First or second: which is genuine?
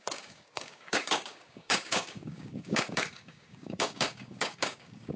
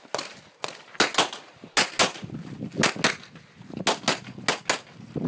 second